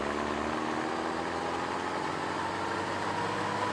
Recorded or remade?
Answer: recorded